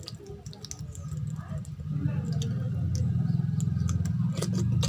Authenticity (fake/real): real